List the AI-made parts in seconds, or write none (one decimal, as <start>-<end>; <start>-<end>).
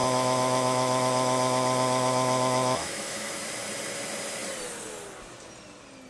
0.0-3.3